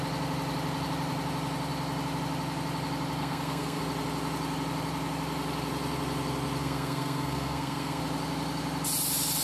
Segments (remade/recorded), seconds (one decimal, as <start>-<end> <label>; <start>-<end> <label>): 0.0-3.2 recorded; 3.2-3.8 remade; 3.8-6.6 recorded; 6.6-8.0 remade; 8.0-9.4 recorded